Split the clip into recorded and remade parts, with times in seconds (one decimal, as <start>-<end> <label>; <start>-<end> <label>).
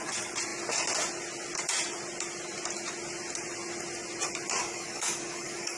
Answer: 0.0-4.6 recorded; 4.6-5.8 remade